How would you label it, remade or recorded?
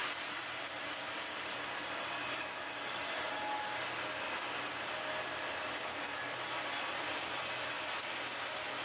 recorded